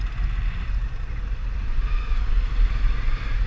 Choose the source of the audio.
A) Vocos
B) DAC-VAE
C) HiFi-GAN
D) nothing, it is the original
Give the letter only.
D